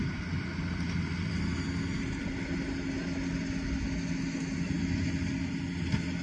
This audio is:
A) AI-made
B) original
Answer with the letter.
B